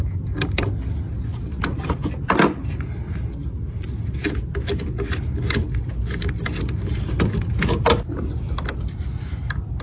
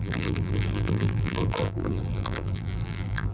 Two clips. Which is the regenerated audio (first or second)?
second